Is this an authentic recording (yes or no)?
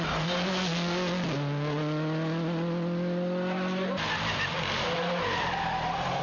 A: yes